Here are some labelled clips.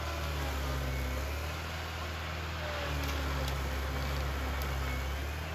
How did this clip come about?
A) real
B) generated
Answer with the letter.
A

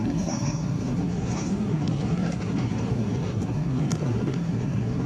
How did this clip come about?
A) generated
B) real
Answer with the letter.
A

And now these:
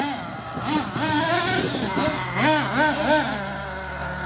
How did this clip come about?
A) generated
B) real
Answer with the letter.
B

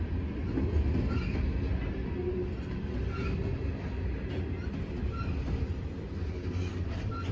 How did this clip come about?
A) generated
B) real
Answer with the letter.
B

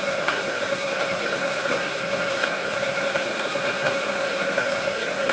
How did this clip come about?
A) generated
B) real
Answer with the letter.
A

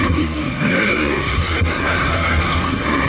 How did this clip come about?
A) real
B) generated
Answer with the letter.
B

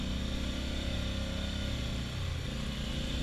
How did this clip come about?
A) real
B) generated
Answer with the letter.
A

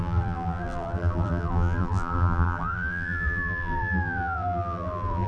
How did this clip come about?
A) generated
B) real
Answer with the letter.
A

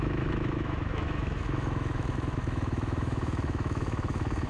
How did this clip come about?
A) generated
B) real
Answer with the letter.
A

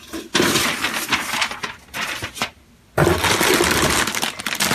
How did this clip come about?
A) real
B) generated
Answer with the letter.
A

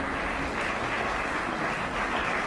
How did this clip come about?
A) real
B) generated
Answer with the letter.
A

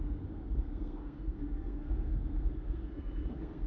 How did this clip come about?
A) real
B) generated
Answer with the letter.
B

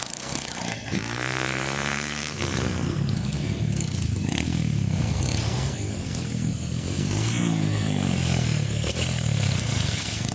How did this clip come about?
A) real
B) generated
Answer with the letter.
B